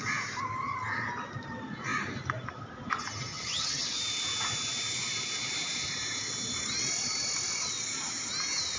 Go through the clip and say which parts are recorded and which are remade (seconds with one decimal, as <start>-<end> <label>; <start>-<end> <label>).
0.0-3.3 recorded; 3.3-4.0 remade; 4.0-8.8 recorded